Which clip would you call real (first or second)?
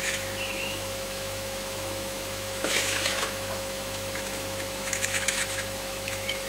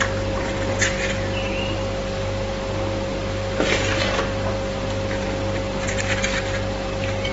second